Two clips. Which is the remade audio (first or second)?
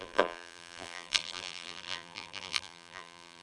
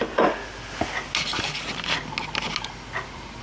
first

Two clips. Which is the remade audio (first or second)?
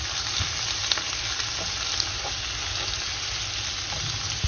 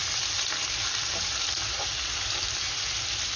second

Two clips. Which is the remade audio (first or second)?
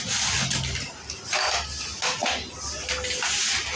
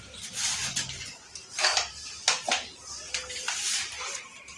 second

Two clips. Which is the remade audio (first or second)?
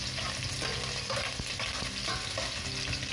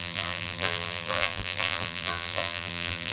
second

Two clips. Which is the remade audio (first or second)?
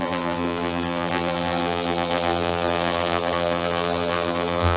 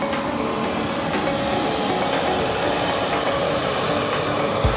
first